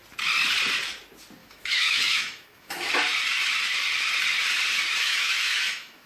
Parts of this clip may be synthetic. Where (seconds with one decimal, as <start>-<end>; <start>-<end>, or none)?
1.4-2.9; 5.0-6.1